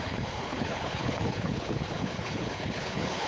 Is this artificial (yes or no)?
yes